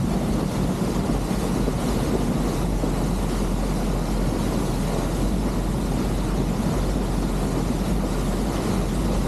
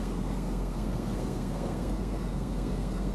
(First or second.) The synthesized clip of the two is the second